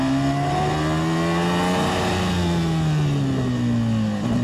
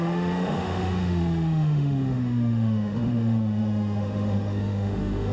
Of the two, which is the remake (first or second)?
second